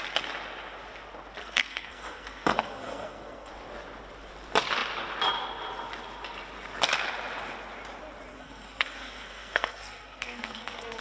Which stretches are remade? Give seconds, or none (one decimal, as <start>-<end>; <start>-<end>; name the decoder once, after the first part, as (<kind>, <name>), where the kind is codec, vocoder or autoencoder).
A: 1.4-3.5 (codec, SNAC); 8.3-11.0